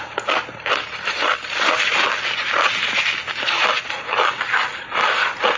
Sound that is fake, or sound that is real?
real